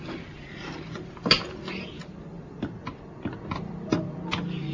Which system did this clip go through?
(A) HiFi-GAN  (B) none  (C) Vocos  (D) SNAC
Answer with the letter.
B